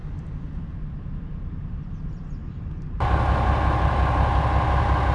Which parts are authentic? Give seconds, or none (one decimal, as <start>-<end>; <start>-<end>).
0.0-5.1